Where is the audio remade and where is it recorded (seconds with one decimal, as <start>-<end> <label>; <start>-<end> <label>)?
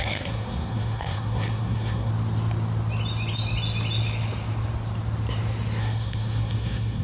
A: 0.0-2.1 remade; 2.1-5.8 recorded; 5.8-7.0 remade